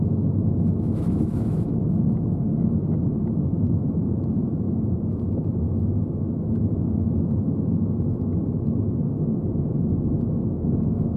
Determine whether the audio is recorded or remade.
remade